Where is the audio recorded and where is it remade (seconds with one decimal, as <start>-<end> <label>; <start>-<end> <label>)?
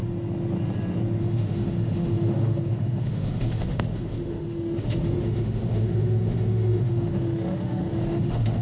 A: 0.0-1.2 recorded; 1.2-8.6 remade